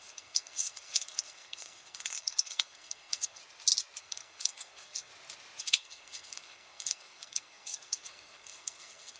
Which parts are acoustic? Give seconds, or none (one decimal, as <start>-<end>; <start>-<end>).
3.4-4.0; 5.1-5.6